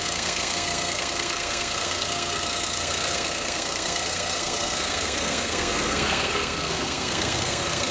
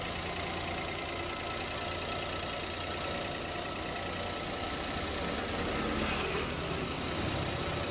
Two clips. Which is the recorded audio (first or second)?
second